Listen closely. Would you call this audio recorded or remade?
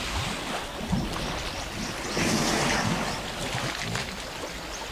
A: recorded